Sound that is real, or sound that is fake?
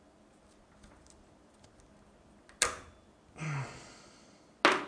real